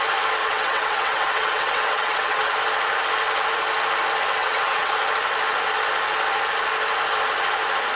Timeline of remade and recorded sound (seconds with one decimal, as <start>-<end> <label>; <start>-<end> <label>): 0.0-0.4 recorded; 0.4-2.5 remade; 2.5-4.4 recorded; 4.4-4.9 remade; 4.9-8.0 recorded